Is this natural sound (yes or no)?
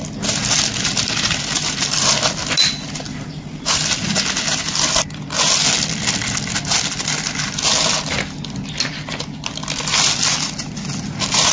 yes